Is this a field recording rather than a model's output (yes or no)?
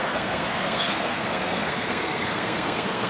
no